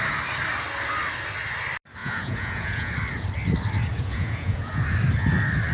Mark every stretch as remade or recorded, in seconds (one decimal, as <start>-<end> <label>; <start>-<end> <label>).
0.0-2.0 recorded; 2.0-2.9 remade; 2.9-3.9 recorded; 3.9-4.7 remade; 4.7-5.7 recorded